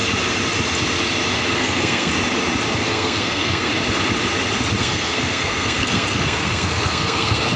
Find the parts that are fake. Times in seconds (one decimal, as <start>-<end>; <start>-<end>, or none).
1.5-2.1; 2.7-3.7; 4.8-7.6